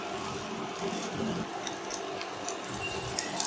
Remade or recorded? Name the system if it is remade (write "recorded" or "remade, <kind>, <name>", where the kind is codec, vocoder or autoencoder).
recorded